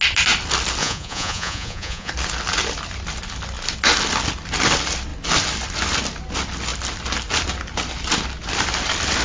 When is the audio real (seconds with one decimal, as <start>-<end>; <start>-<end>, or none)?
0.0-0.8; 2.1-9.2